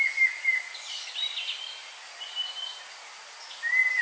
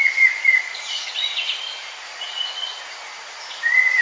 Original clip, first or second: first